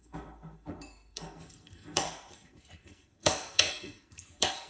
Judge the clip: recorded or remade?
remade